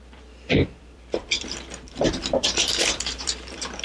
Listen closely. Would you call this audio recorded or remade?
remade